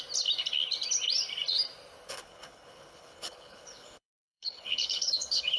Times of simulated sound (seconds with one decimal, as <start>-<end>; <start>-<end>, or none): 2.1-5.6